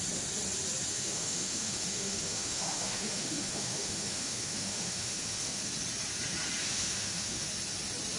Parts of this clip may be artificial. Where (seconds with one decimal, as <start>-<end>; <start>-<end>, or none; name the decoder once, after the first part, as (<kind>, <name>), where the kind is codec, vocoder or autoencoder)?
0.9-5.7 (autoencoder, DAC-VAE); 6.6-7.5